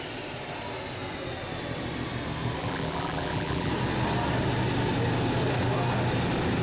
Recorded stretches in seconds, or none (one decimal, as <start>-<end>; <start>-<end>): 0.0-2.6; 3.7-6.6